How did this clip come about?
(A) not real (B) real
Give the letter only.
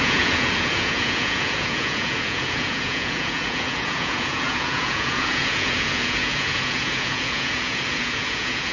A